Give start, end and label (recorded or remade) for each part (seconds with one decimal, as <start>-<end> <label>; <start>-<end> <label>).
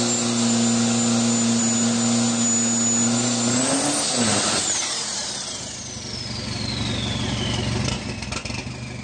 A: 0.0-4.3 recorded; 4.3-5.8 remade; 5.8-9.0 recorded